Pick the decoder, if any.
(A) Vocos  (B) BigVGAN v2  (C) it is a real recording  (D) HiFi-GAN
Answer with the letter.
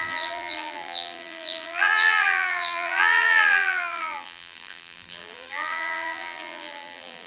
B